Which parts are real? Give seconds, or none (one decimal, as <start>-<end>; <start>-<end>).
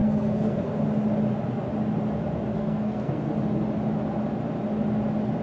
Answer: 0.8-2.5; 3.3-5.4